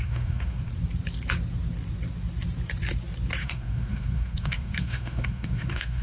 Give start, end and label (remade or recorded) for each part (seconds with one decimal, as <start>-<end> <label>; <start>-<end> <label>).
0.0-0.7 remade; 0.7-3.4 recorded; 3.4-6.0 remade